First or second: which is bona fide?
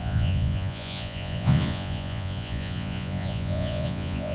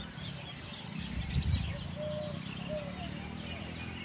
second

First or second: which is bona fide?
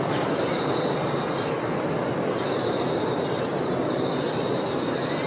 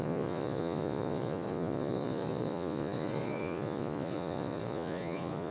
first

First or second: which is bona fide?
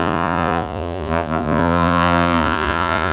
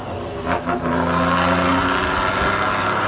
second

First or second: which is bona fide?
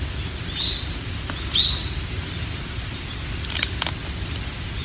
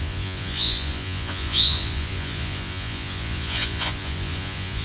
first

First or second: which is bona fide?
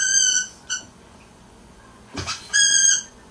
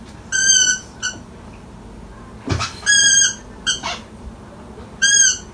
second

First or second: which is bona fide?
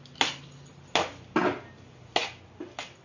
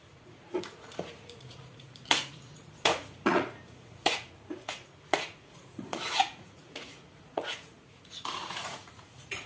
first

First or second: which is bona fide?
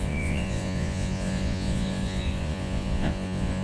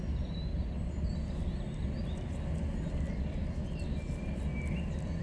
second